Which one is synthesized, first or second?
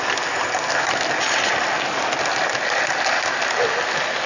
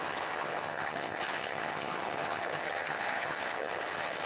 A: second